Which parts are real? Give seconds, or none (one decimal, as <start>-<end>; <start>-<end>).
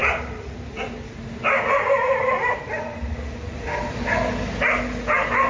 0.0-5.5